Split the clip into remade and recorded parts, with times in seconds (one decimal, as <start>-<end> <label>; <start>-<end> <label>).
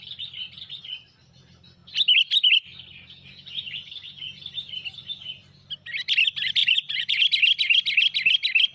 0.0-6.6 recorded; 6.6-7.2 remade; 7.2-8.7 recorded